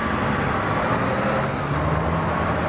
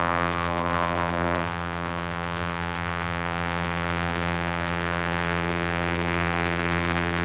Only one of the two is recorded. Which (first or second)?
first